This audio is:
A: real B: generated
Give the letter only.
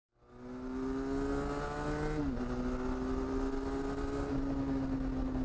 A